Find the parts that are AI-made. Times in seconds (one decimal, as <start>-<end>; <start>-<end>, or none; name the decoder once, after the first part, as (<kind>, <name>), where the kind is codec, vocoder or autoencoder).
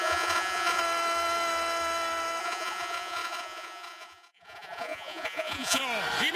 0.0-0.8 (vocoder, Vocos); 2.4-5.8